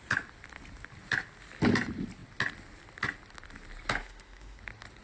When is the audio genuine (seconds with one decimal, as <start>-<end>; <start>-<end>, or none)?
0.0-4.0; 4.6-5.0